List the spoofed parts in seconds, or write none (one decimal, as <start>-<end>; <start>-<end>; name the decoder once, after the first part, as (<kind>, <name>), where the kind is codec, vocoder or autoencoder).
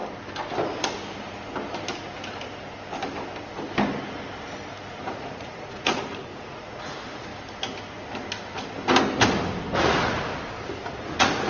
5.0-7.3 (vocoder, Vocos); 9.8-10.3; 10.9-11.5